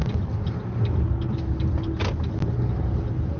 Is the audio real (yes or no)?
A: yes